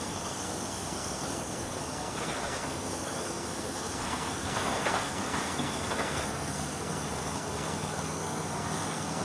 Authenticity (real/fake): fake